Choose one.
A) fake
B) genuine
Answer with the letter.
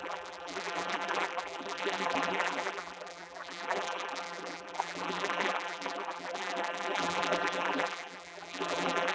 A